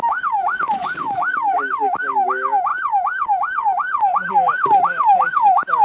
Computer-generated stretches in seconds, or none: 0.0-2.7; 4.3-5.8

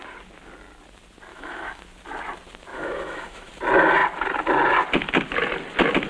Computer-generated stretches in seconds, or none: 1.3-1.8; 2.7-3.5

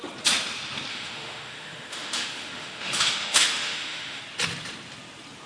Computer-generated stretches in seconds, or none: 0.9-4.2

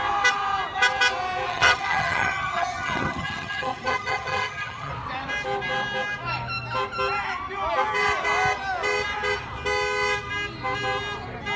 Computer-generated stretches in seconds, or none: 1.5-4.9

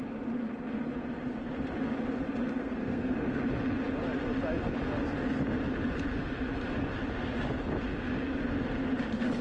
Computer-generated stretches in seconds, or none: 2.6-3.4

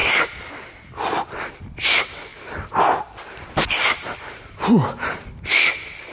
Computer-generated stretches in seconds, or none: none